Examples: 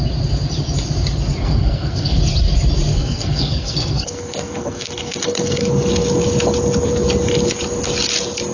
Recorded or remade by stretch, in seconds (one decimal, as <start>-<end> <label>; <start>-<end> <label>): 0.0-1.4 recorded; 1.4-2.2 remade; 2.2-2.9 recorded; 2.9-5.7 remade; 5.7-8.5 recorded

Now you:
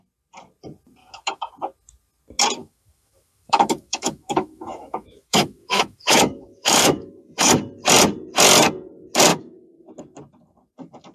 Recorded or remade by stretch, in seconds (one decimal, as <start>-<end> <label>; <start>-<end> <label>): 0.0-1.0 recorded; 1.0-1.5 remade; 1.5-2.6 recorded; 2.6-7.5 remade; 7.5-9.3 recorded; 9.3-9.8 remade; 9.8-11.1 recorded

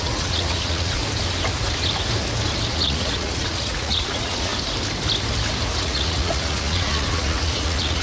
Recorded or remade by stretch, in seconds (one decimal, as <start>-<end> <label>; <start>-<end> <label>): 0.0-1.0 remade; 1.0-2.7 recorded; 2.7-4.5 remade; 4.5-5.8 recorded; 5.8-8.0 remade

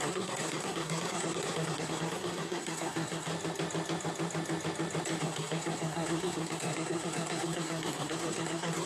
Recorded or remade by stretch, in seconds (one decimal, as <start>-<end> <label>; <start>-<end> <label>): 0.0-3.3 remade; 3.3-5.2 recorded; 5.2-8.9 remade